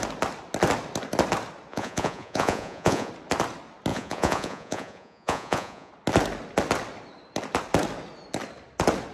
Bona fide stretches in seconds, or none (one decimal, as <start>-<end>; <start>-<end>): 0.0-1.7; 3.1-3.9; 5.9-9.1